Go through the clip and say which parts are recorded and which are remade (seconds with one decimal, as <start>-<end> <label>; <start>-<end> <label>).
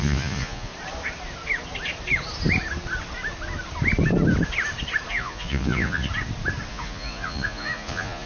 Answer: 0.0-0.7 remade; 0.7-5.1 recorded; 5.1-6.1 remade; 6.1-6.7 recorded; 6.7-8.3 remade